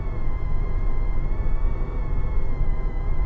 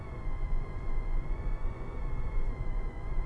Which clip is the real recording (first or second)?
first